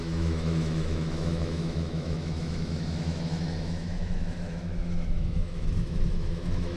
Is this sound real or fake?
fake